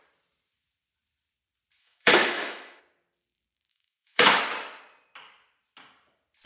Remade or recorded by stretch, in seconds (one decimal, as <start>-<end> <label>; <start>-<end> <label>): 0.0-1.8 recorded; 1.8-2.8 remade; 2.8-3.7 recorded; 3.7-4.4 remade; 4.4-6.5 recorded